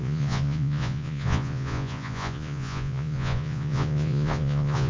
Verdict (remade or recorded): remade